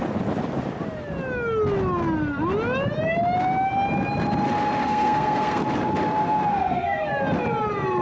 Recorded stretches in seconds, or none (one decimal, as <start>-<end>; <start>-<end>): 0.0-4.8; 5.6-6.5; 7.1-8.0